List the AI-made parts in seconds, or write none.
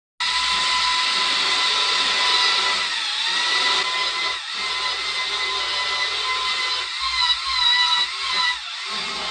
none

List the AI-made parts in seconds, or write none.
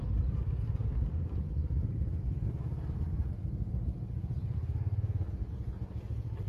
none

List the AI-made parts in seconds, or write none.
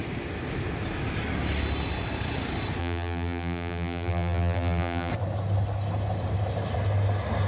2.8-5.1 (vocoder, BigVGAN v2)